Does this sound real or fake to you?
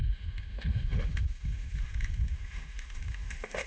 fake